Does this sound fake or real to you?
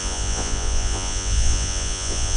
fake